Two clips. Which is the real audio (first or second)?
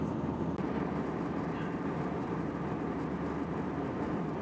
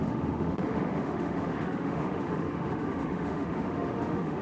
first